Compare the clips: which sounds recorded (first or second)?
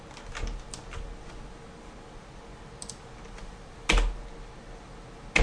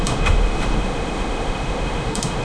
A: first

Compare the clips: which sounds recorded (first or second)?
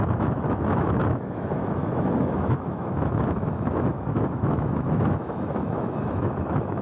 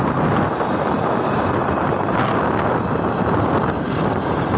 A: second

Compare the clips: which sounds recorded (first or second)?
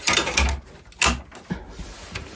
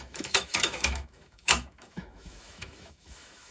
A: first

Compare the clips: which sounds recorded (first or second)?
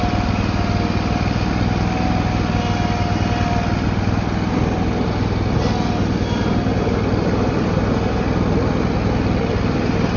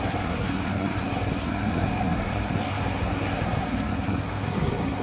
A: first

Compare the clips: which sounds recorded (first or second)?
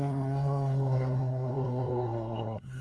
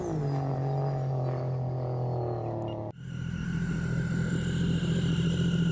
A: second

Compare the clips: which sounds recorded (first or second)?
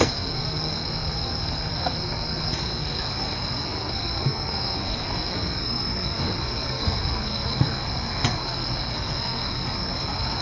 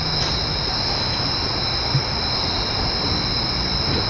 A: second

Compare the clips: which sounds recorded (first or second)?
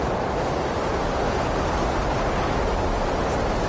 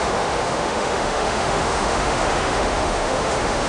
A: first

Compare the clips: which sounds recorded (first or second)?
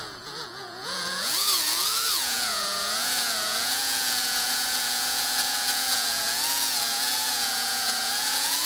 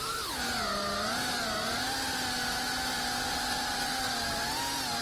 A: second